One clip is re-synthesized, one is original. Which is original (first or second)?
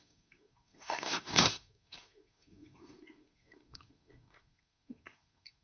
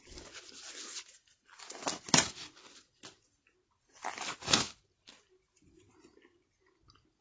second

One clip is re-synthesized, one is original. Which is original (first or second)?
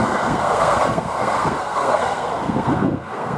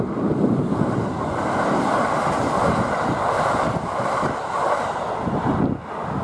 second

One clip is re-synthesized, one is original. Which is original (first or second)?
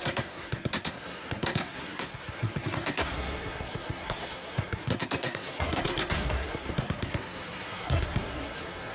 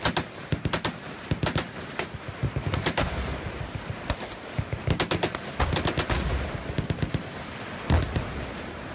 second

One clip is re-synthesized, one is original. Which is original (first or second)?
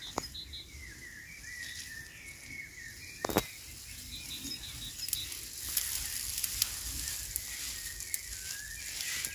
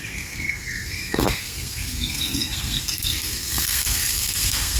first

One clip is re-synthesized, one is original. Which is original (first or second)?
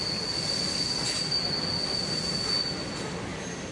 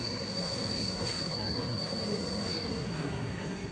first